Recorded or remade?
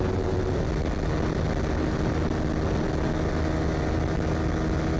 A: recorded